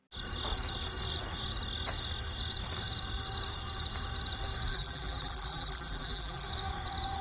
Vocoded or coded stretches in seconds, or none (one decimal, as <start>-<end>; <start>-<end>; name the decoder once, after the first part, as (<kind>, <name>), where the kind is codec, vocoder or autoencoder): 4.7-6.5 (vocoder, BigVGAN v2)